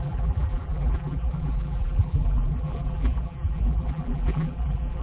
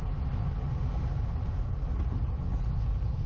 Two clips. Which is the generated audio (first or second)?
first